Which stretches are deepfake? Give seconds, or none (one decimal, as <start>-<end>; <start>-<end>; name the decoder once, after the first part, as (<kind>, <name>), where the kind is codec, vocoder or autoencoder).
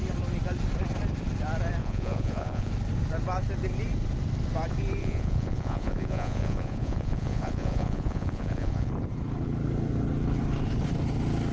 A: 1.8-2.7 (vocoder, Vocos); 5.0-8.9